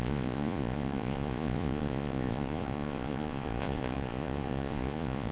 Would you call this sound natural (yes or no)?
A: no